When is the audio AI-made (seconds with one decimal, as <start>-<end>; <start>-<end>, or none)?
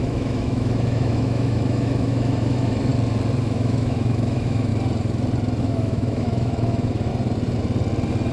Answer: 0.0-2.9; 3.4-4.7; 5.6-7.1